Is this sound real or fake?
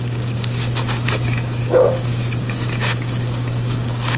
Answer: fake